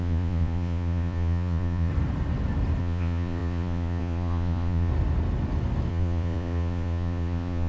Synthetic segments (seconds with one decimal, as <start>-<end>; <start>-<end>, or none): 0.0-1.9; 2.8-4.9; 5.9-7.7